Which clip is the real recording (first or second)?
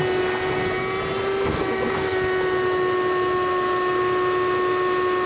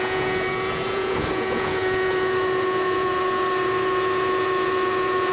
first